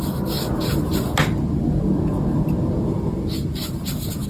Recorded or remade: recorded